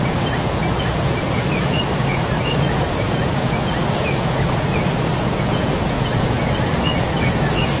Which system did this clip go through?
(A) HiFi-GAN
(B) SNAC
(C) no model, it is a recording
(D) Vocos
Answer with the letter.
D